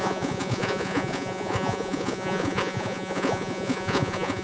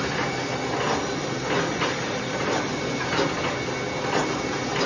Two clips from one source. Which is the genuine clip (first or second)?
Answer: second